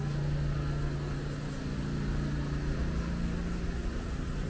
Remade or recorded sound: recorded